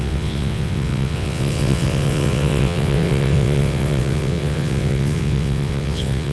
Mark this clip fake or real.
fake